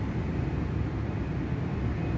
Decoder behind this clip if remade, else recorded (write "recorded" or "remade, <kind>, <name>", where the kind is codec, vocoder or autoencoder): recorded